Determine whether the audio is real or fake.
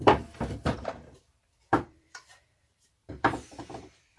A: fake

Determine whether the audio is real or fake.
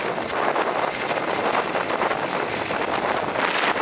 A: real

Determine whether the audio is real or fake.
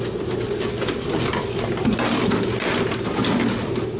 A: real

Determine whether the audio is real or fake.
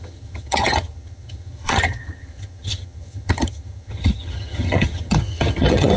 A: fake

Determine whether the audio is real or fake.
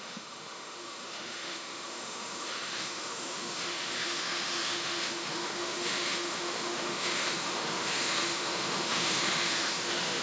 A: fake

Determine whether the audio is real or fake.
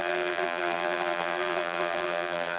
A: fake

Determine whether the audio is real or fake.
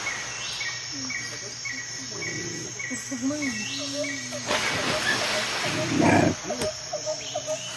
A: real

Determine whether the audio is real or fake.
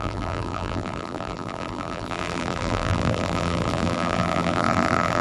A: fake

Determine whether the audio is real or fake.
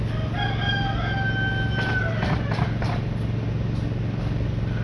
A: real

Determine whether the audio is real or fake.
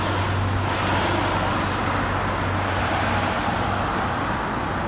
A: real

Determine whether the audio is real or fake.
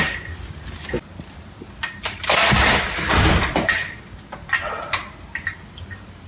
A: real